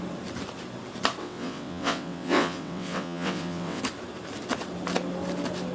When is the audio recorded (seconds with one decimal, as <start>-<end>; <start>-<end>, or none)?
0.0-1.2; 3.8-5.7